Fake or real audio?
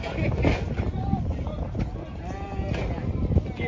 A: real